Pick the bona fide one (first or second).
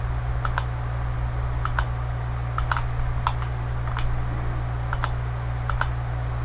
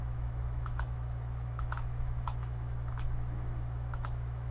first